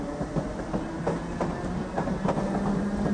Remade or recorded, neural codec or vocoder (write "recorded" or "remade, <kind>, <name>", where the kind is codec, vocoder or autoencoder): recorded